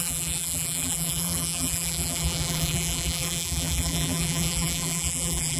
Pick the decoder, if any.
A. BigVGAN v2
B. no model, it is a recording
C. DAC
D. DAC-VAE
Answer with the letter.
A